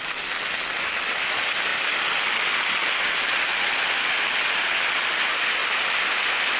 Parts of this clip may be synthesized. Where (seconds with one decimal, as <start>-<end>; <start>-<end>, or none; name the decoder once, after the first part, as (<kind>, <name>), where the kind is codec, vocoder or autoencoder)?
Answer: 5.6-6.6 (vocoder, BigVGAN v2)